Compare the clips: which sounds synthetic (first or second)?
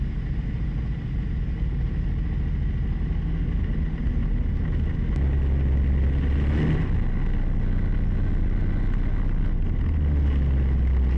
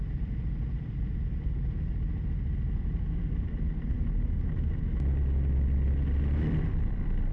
second